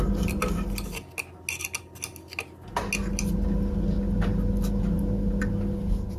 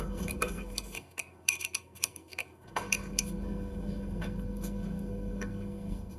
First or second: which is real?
first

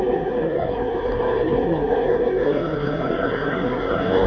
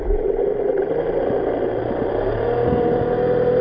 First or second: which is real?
second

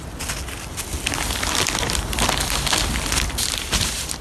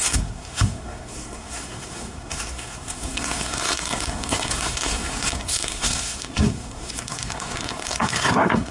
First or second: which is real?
first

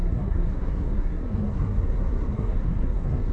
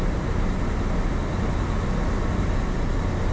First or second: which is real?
second